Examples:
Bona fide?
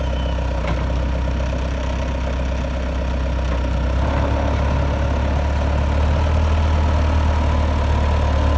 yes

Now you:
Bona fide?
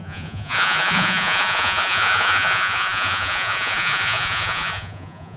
no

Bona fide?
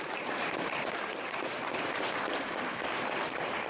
no